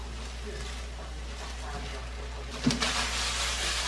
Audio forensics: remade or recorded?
recorded